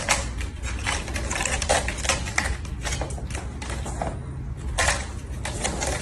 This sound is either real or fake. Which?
real